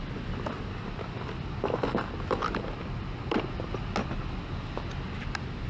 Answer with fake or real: real